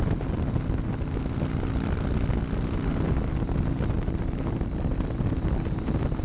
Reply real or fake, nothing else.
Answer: real